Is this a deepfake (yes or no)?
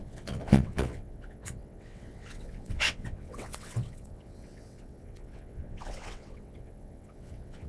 yes